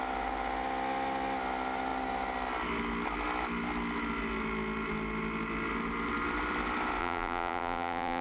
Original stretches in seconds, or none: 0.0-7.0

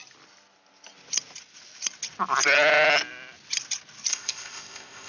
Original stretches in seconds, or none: 0.0-4.1